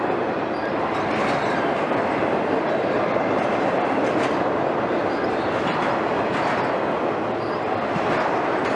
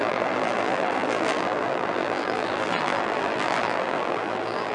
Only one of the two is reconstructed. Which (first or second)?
second